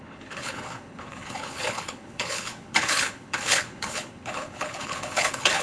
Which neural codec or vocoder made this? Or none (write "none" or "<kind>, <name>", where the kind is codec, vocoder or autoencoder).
codec, HILCodec